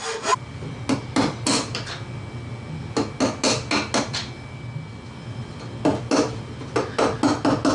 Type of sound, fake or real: real